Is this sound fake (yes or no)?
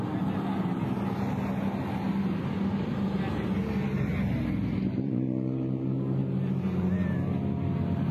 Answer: no